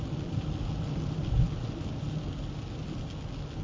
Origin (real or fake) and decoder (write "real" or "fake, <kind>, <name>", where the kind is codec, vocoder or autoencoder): real